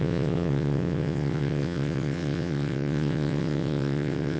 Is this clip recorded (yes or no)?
no